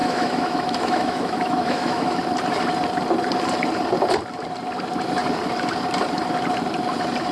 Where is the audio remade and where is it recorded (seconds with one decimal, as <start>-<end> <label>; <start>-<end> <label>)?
0.0-2.2 remade; 2.2-7.3 recorded